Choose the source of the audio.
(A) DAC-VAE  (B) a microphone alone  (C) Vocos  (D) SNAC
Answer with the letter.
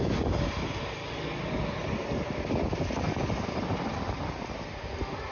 B